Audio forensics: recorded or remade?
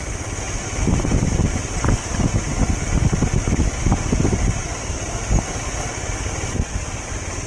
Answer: recorded